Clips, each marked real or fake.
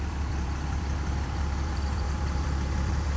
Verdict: fake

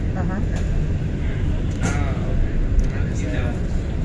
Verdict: real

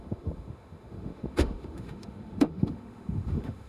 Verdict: fake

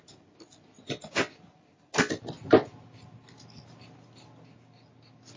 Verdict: real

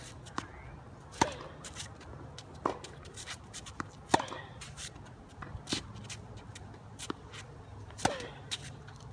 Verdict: real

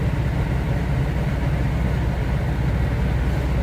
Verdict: real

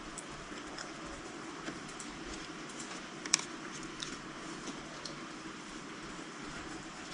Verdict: fake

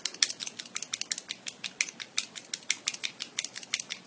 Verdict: real